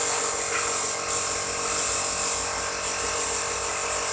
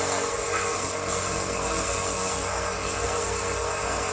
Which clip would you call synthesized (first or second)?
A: second